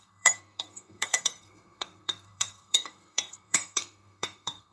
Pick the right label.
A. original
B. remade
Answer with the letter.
B